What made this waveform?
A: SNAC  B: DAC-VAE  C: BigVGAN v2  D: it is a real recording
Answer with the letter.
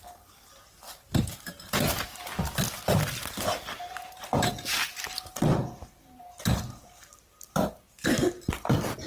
D